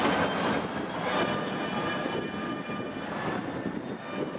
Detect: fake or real real